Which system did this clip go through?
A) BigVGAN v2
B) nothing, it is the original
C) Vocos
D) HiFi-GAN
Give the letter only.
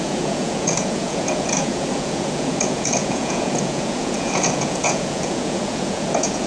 C